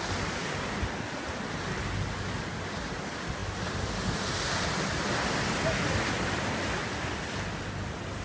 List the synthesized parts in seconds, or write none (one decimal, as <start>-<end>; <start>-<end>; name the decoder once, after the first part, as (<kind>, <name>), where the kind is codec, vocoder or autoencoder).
none